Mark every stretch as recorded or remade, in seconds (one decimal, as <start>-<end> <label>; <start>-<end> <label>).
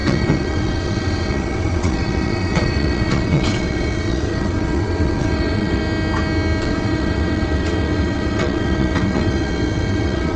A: 0.0-5.8 remade; 5.8-6.6 recorded; 6.6-10.4 remade